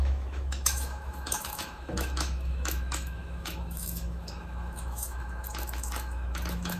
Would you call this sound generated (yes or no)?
yes